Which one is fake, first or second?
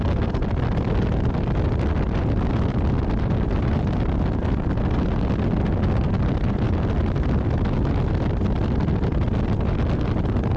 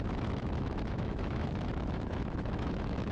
second